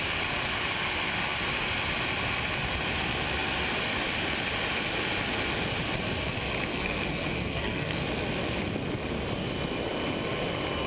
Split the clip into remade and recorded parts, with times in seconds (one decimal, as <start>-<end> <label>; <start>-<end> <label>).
0.0-6.7 recorded; 6.7-8.0 remade; 8.0-10.9 recorded